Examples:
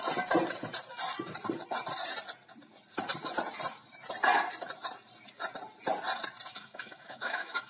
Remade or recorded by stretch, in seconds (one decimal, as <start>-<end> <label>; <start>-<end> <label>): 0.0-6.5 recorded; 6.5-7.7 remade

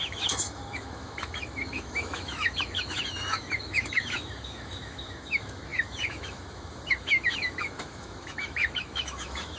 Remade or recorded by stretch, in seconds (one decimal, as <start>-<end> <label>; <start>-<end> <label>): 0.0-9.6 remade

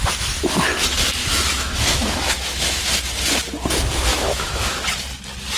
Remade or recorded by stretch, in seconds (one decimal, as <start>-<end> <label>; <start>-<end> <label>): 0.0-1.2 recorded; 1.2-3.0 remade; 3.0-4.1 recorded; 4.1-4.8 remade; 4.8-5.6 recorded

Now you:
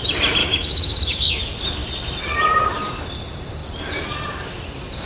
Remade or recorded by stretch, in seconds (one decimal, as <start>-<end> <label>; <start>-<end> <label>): 0.0-0.4 recorded; 0.4-1.3 remade; 1.3-5.1 recorded